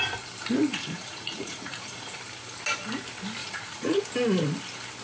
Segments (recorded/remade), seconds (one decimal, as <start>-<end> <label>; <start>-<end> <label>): 0.0-0.7 recorded; 0.7-2.2 remade; 2.2-3.4 recorded; 3.4-4.0 remade; 4.0-5.0 recorded